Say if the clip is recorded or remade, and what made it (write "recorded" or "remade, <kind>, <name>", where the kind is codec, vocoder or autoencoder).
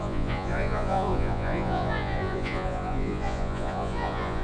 remade, vocoder, Vocos